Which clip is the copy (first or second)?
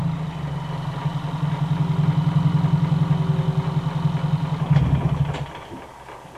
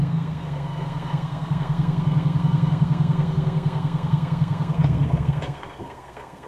second